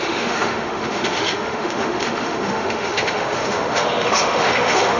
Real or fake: fake